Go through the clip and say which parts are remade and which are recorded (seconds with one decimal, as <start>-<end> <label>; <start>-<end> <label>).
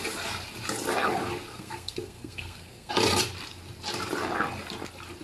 0.0-1.5 recorded; 1.5-2.9 remade; 2.9-5.2 recorded